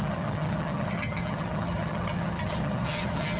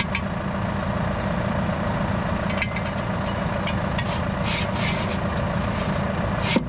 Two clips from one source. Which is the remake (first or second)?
first